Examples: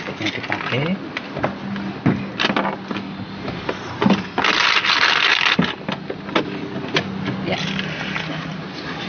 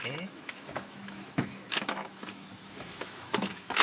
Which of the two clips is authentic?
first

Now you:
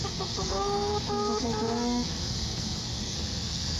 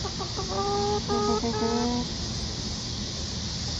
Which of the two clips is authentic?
second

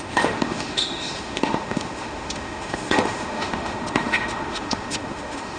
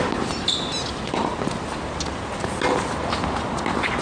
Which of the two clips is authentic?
second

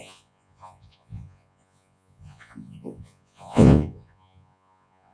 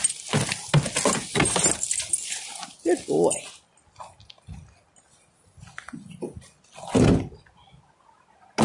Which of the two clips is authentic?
second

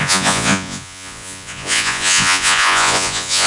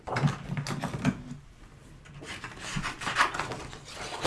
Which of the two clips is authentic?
second